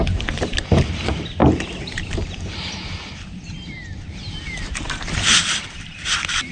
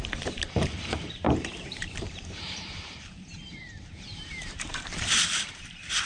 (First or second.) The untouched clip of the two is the first